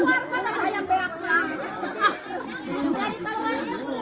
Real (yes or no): yes